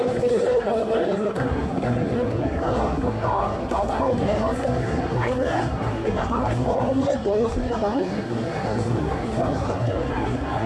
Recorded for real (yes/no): no